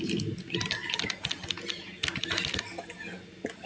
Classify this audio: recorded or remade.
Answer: recorded